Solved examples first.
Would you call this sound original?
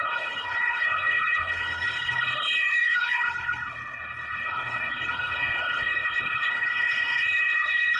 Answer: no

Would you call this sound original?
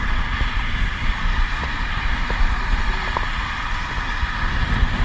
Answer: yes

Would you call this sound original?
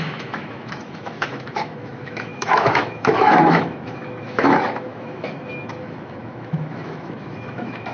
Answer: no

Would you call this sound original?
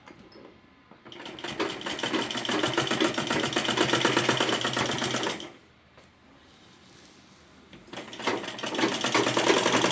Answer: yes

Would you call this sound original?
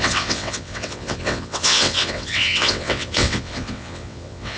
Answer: no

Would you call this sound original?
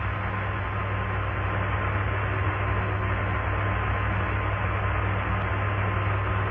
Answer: yes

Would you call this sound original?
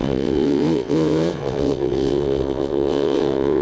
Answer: no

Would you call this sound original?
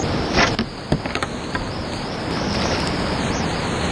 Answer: yes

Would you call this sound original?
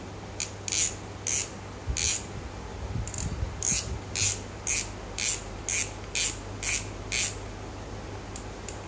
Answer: yes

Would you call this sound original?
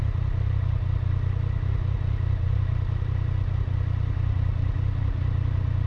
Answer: yes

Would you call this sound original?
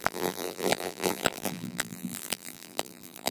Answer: no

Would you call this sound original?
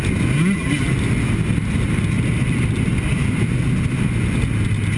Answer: yes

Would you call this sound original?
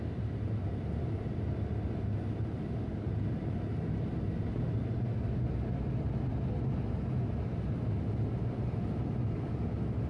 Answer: yes